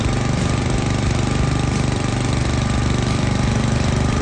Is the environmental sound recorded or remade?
remade